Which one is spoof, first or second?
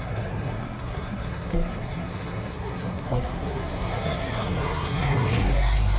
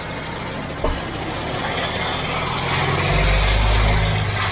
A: first